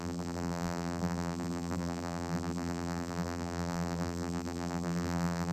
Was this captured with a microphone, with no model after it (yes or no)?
no